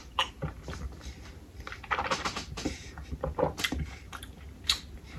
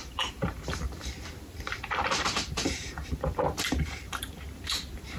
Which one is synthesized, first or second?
second